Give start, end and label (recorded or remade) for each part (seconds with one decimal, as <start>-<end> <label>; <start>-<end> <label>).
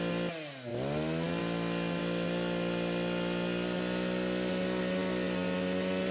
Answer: 0.0-6.1 recorded